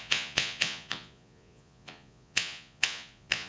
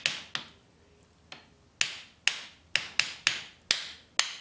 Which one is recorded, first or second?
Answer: second